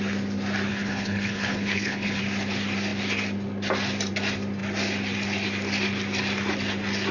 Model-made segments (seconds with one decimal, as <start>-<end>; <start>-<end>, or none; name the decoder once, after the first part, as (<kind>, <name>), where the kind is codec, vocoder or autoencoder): 0.7-2.2 (codec, HILCodec)